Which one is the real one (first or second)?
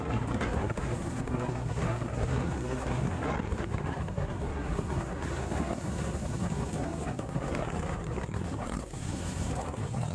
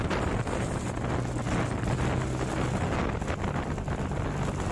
second